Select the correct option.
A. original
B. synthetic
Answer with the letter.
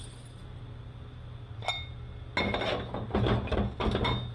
A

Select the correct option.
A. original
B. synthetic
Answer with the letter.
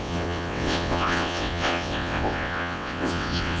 B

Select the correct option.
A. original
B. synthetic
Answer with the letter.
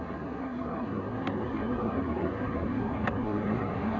B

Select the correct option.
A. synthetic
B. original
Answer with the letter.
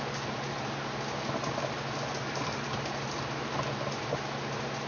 B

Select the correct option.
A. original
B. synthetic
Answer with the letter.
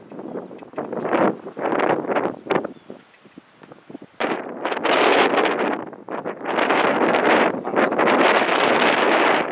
A